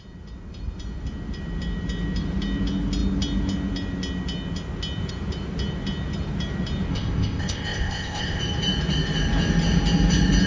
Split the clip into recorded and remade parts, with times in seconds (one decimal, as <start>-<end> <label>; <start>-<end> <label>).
0.0-6.9 recorded; 6.9-8.4 remade; 8.4-10.5 recorded